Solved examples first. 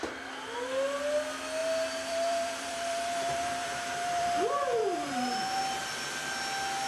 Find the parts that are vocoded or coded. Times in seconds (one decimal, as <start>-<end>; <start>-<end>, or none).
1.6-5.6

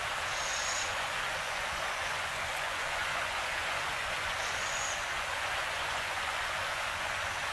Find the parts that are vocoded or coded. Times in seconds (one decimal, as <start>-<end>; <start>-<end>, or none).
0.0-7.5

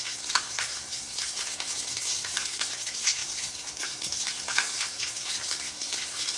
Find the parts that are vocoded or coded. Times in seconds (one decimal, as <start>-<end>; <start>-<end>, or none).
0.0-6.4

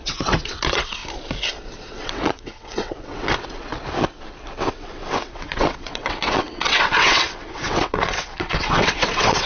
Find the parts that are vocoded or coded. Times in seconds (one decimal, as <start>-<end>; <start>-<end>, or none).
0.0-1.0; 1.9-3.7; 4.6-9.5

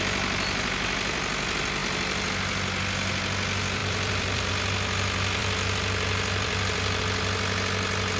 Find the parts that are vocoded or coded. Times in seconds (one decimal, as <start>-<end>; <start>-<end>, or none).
1.8-2.3; 3.8-4.5; 5.4-7.0

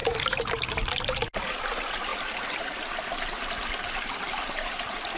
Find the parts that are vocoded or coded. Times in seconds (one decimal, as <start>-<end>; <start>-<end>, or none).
0.0-0.9